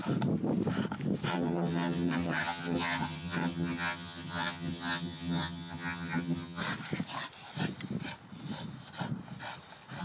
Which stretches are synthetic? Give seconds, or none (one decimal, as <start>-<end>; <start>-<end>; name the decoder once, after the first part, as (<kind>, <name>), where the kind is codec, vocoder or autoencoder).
1.3-6.6 (vocoder, HiFi-GAN)

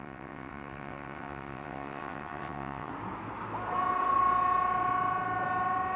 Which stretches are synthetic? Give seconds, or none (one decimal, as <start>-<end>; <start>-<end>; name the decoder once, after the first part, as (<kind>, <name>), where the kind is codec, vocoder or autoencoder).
0.0-2.9 (vocoder, WaveNeXt)